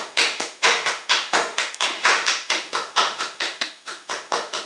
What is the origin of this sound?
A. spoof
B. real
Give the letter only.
A